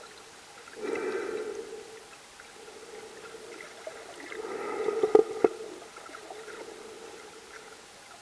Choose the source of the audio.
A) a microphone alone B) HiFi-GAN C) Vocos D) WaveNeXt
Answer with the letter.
A